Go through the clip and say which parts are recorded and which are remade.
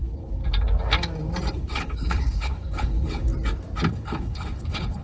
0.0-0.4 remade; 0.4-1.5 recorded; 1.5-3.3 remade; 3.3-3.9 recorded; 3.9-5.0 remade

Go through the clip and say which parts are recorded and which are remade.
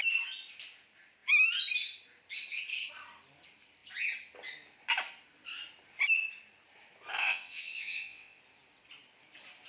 0.0-7.2 recorded; 7.2-8.4 remade; 8.4-9.7 recorded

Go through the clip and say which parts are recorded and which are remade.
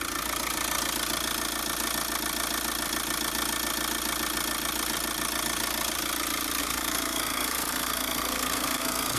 0.0-6.6 recorded; 6.6-9.2 remade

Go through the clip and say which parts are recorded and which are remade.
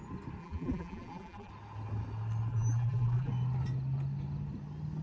0.0-0.4 recorded; 0.4-1.5 remade; 1.5-2.5 recorded; 2.5-3.3 remade; 3.3-5.0 recorded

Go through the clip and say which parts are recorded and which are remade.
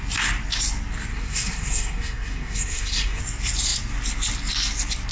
0.0-1.1 recorded; 1.1-3.2 remade; 3.2-5.1 recorded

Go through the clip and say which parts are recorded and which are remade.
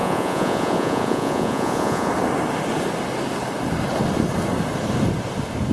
0.0-2.1 remade; 2.1-5.7 recorded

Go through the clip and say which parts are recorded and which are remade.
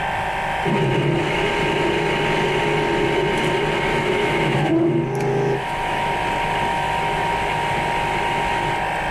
0.0-3.9 recorded; 3.9-4.7 remade; 4.7-5.3 recorded; 5.3-6.1 remade; 6.1-6.7 recorded; 6.7-7.3 remade; 7.3-9.1 recorded